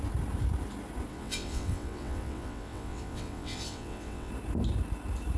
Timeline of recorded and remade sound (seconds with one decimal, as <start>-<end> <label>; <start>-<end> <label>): 0.0-1.1 recorded; 1.1-4.3 remade; 4.3-5.4 recorded